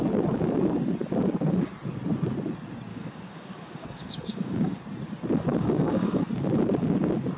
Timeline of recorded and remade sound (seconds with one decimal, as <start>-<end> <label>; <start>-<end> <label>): 0.0-2.9 recorded; 2.9-4.8 remade; 4.8-5.5 recorded; 5.5-6.2 remade; 6.2-7.4 recorded